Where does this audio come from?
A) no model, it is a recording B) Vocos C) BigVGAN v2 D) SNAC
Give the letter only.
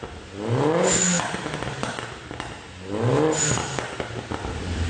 A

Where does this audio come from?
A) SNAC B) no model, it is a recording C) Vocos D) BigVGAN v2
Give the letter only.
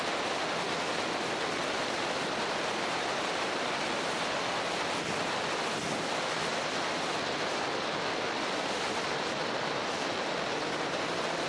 B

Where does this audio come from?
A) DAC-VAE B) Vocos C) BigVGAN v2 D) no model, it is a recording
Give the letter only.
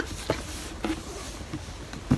D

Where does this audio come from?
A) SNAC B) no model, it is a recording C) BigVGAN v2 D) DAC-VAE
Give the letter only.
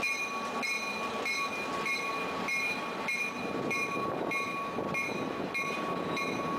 B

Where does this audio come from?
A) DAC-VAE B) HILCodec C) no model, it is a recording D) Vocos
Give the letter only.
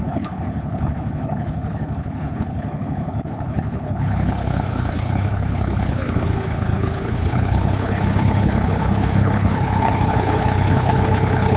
B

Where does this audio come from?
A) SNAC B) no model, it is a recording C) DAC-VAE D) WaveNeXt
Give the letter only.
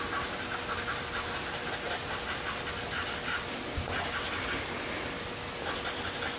B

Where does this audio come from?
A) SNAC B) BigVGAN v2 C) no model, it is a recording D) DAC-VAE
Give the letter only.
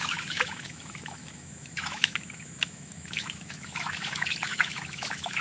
D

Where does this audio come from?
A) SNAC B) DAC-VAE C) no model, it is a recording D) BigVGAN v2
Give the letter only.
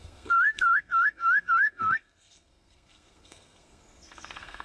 A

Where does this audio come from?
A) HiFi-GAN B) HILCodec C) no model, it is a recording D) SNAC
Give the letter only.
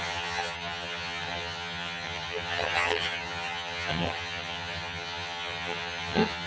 A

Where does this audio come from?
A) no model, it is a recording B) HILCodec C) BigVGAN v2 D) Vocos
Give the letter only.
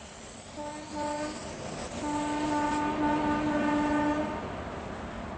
A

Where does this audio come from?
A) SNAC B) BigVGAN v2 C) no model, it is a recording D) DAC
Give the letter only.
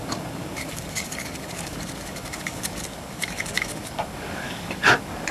D